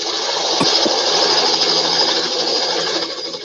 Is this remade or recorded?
recorded